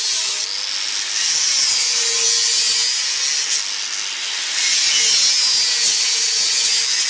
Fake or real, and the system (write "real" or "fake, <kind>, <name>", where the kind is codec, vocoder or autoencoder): real